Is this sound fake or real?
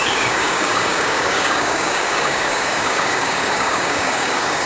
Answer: fake